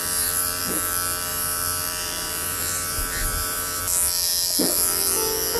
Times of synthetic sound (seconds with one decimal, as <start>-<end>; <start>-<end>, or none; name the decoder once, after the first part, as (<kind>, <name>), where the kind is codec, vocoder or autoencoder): 0.0-0.6 (vocoder, BigVGAN v2); 1.3-3.8